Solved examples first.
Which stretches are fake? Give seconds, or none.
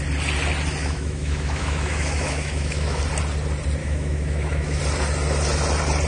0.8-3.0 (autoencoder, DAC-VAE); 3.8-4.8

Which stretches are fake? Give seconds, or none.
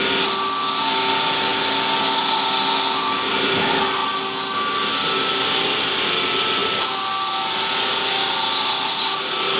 none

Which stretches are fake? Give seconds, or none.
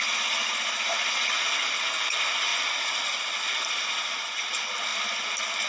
none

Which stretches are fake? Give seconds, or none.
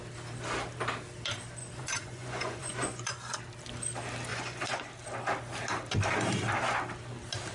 1.6-3.4 (vocoder, Vocos); 4.3-4.9